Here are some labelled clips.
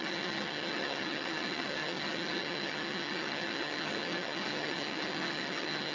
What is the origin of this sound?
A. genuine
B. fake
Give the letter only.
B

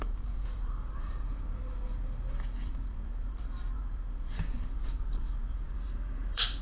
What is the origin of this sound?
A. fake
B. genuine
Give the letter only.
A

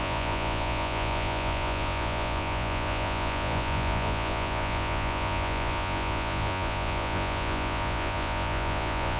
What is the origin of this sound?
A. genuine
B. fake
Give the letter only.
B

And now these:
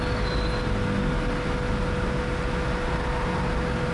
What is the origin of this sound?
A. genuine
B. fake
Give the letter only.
A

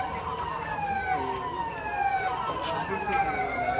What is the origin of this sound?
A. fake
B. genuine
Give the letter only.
B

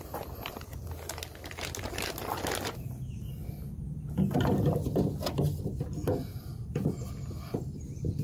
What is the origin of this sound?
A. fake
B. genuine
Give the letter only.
B